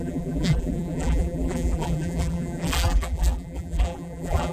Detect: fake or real fake